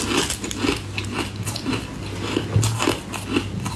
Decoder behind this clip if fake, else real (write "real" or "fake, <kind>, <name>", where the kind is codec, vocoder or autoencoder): real